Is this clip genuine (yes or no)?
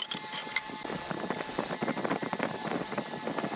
yes